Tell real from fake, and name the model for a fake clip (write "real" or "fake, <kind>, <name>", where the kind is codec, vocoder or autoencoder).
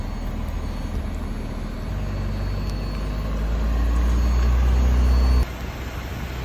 real